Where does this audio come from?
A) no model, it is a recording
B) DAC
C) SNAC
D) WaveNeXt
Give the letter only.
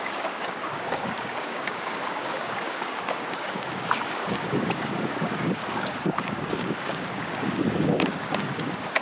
B